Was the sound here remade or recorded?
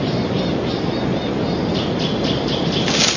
recorded